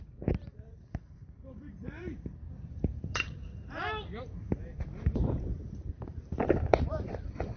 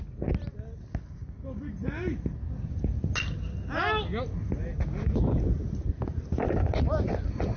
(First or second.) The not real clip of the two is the first